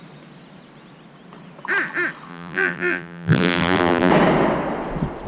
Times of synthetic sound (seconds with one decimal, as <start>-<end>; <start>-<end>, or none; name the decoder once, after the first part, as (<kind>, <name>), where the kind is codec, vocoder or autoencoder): 2.3-4.1 (vocoder, BigVGAN v2)